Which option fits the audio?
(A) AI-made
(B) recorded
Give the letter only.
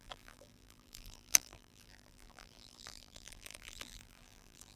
A